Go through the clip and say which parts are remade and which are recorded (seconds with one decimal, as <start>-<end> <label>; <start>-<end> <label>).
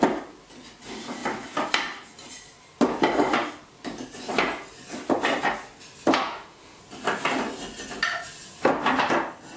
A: 0.0-6.1 recorded; 6.1-6.8 remade; 6.8-9.6 recorded